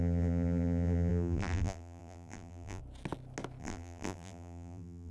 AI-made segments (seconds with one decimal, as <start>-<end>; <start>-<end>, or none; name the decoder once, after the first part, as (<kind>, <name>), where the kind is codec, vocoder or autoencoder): 0.0-2.8 (vocoder, BigVGAN v2); 3.6-5.1

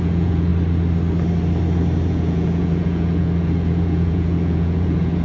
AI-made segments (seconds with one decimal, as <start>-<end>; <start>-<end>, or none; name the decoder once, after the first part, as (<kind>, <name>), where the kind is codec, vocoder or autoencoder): 0.0-0.5 (vocoder, Vocos); 2.1-5.2

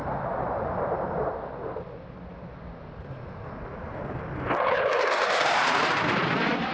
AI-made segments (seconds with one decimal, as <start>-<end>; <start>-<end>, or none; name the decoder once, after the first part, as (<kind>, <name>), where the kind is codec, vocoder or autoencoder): none